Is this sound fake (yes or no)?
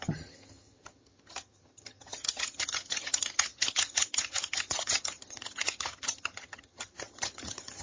yes